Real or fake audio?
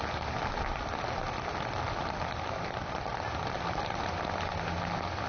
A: real